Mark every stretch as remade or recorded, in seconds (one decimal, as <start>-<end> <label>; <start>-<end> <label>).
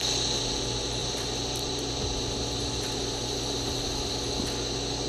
0.0-1.0 recorded; 1.0-4.1 remade; 4.1-5.1 recorded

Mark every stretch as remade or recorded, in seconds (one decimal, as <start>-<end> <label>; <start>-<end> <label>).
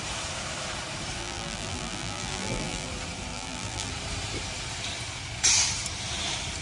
0.0-1.2 recorded; 1.2-2.9 remade; 2.9-3.3 recorded; 3.3-3.9 remade; 3.9-6.6 recorded